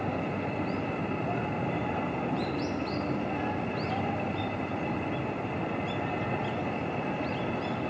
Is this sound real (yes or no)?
yes